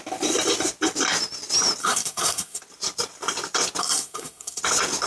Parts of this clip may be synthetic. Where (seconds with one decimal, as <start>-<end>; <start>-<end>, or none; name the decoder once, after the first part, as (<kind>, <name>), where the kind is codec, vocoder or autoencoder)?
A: 1.8-2.6 (codec, SNAC); 3.8-4.6